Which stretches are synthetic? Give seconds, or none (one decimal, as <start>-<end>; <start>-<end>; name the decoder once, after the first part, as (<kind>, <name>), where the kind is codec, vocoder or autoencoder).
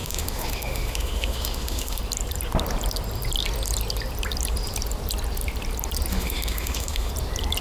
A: 0.0-2.0 (autoencoder, DAC-VAE); 6.1-7.1